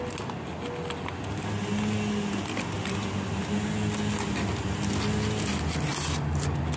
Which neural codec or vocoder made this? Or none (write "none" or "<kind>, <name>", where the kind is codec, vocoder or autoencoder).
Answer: none